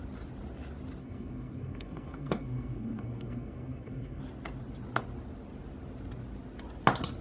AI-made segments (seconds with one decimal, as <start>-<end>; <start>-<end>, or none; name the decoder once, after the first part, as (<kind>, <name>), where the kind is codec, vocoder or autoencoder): 1.0-4.2 (codec, SNAC)